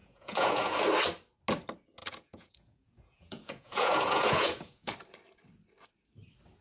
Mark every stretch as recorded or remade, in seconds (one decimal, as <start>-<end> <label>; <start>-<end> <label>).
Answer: 0.0-0.8 remade; 0.8-2.0 recorded; 2.0-4.9 remade; 4.9-6.6 recorded